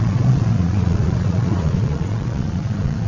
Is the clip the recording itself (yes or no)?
no